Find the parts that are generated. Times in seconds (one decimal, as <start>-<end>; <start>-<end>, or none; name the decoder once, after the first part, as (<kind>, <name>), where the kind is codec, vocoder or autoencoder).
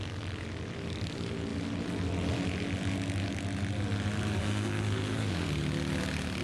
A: 4.4-5.5 (codec, SNAC)